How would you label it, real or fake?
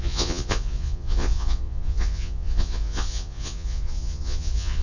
fake